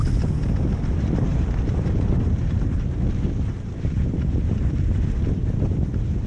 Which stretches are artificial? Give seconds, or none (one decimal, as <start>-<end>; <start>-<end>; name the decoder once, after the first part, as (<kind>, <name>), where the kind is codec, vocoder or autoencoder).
1.3-5.1 (vocoder, BigVGAN v2)